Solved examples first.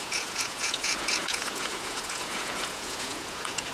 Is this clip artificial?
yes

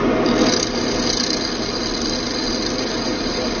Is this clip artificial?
no